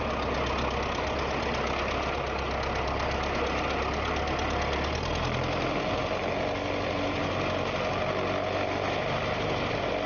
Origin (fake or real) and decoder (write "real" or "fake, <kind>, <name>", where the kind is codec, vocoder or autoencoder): real